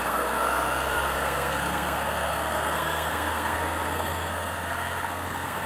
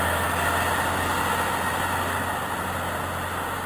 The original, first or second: second